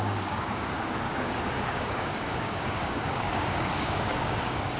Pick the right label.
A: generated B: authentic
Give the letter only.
A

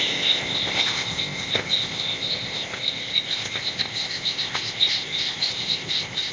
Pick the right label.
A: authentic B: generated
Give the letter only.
B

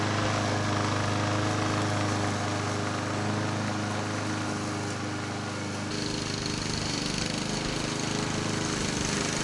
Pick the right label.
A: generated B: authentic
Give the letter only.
B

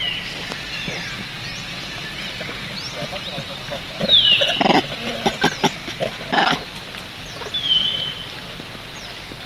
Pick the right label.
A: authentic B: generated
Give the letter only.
A